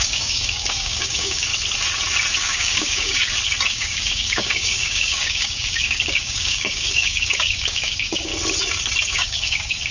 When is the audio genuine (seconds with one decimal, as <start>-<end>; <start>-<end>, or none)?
1.5-2.4; 3.2-3.7; 8.3-9.1